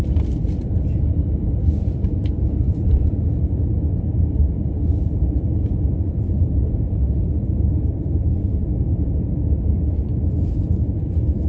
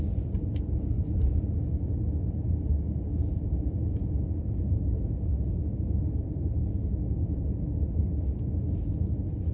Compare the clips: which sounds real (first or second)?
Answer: second